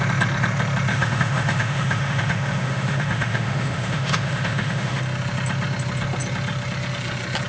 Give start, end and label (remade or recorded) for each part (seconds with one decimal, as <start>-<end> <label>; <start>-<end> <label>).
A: 0.0-0.9 recorded; 0.9-5.0 remade; 5.0-7.5 recorded